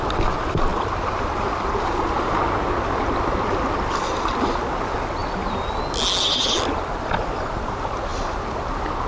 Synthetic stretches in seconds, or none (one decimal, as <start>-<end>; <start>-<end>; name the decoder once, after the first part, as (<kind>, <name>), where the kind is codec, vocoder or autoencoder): none